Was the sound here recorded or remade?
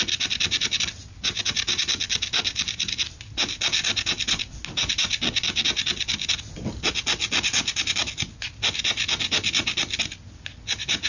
recorded